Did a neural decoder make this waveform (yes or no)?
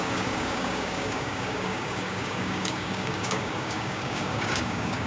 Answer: yes